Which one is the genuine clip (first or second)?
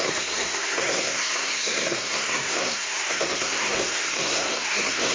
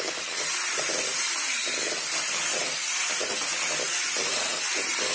second